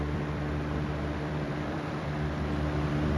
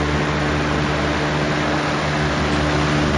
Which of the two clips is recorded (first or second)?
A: second